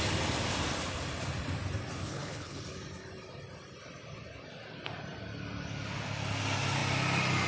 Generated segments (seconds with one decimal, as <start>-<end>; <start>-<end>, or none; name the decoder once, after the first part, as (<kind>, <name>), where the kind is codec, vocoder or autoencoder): 2.0-2.6 (codec, HILCodec)